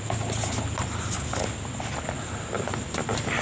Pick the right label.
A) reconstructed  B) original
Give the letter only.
B